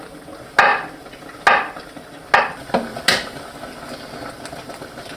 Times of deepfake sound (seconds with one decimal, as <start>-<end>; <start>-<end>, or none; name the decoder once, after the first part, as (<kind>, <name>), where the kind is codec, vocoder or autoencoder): none